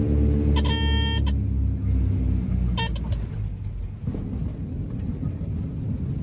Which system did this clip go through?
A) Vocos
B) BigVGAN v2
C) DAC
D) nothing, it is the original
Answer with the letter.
D